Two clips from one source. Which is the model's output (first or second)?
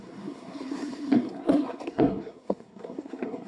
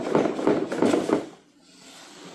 first